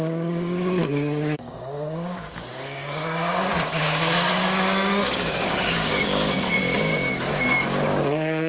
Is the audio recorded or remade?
remade